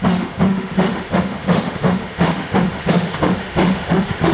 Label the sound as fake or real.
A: fake